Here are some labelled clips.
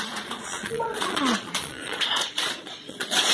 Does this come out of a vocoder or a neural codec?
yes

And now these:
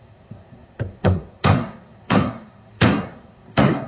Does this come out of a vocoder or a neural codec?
yes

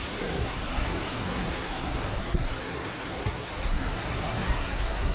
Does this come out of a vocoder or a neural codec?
yes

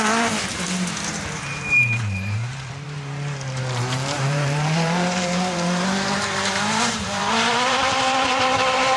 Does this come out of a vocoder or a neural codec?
yes